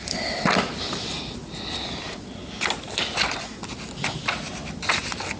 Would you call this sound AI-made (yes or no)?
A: no